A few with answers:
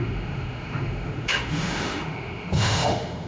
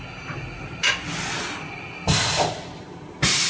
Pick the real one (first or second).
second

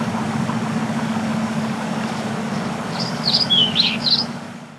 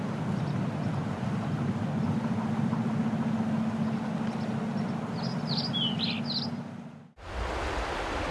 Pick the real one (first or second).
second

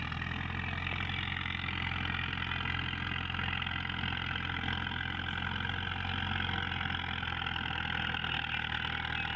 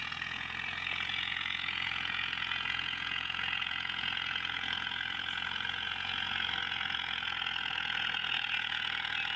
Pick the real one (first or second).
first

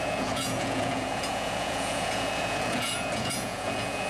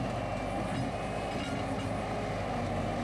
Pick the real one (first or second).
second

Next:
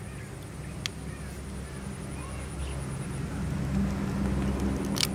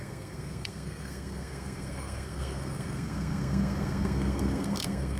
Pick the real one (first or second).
first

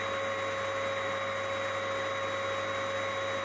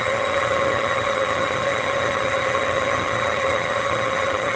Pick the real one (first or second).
first